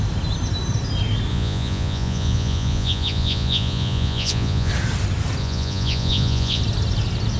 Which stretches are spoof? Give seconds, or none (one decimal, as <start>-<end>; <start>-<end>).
1.3-4.7; 5.4-6.6